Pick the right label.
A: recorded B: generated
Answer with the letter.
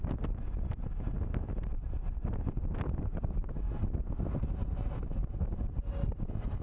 A